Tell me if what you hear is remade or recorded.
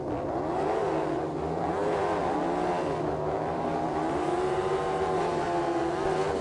recorded